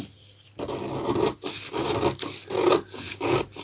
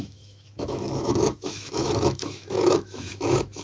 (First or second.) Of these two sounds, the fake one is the second